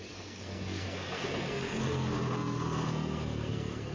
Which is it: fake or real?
fake